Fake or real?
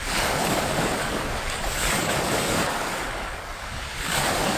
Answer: fake